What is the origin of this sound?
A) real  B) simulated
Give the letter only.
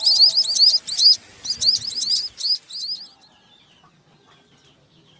A